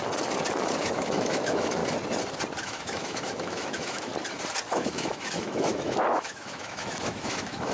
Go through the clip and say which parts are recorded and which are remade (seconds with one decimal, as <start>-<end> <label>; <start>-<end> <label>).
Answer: 0.0-0.8 recorded; 0.8-1.8 remade; 1.8-2.6 recorded; 2.6-4.1 remade; 4.1-4.7 recorded; 4.7-7.7 remade